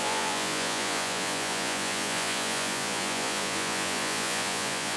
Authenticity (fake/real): fake